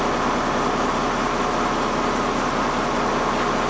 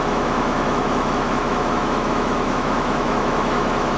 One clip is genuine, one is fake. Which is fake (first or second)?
second